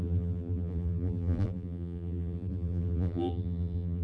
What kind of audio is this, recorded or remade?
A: remade